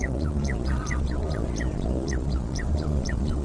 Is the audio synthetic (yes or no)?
yes